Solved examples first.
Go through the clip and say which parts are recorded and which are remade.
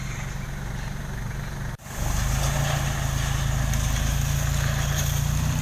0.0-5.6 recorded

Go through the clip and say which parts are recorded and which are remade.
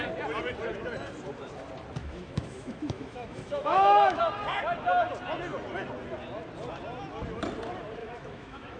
0.0-2.0 recorded; 2.0-4.2 remade; 4.2-8.0 recorded; 8.0-8.8 remade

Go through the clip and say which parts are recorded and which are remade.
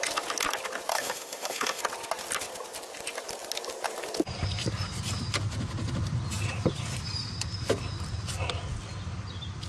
0.0-0.9 recorded; 0.9-1.8 remade; 1.8-9.7 recorded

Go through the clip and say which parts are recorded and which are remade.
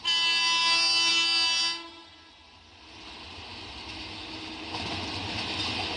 0.0-6.0 recorded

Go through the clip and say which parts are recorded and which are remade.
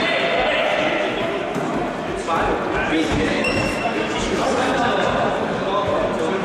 0.0-3.1 recorded; 3.1-4.8 remade; 4.8-6.4 recorded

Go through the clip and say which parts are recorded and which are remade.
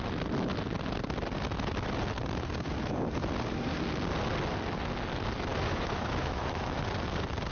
0.0-5.5 recorded; 5.5-6.8 remade; 6.8-7.5 recorded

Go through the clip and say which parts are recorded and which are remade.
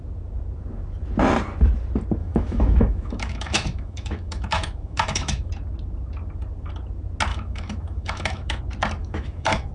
0.0-2.2 recorded; 2.2-5.5 remade; 5.5-7.3 recorded; 7.3-8.6 remade; 8.6-9.0 recorded; 9.0-9.7 remade